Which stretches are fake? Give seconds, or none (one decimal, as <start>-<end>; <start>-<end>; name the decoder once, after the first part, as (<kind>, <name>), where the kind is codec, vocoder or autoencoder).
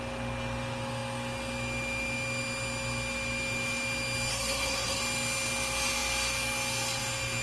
4.3-5.0 (codec, SNAC)